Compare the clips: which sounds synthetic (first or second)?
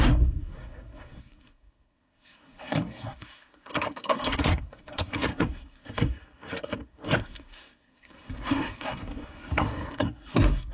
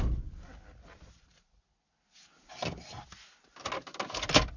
first